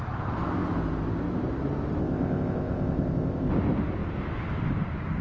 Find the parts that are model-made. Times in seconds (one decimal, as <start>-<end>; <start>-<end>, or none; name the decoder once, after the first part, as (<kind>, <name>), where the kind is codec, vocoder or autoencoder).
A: 2.0-3.5 (codec, ZipCodec)